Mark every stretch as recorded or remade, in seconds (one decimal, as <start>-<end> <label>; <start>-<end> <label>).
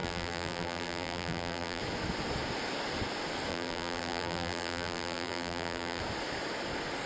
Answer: 0.0-1.8 remade; 1.8-3.5 recorded; 3.5-6.0 remade; 6.0-7.1 recorded